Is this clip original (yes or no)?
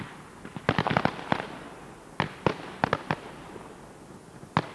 yes